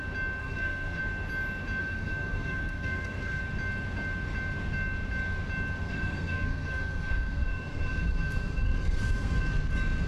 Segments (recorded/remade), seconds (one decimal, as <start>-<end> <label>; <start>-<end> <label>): 0.0-0.4 recorded; 0.4-1.0 remade; 1.0-1.8 recorded; 1.8-3.4 remade; 3.4-5.8 recorded; 5.8-9.4 remade; 9.4-10.1 recorded